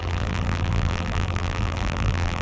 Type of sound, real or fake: fake